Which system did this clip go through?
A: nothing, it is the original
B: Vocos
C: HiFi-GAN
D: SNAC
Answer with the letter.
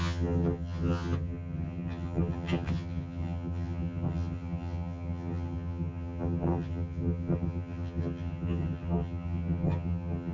C